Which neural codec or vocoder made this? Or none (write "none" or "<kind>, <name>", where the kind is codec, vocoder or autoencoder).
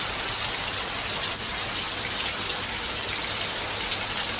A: none